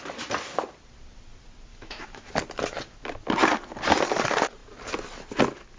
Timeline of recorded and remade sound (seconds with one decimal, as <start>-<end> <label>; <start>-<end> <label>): 0.0-1.7 recorded; 1.7-2.3 remade; 2.3-5.8 recorded